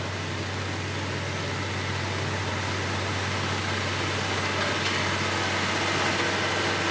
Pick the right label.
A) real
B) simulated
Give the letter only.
A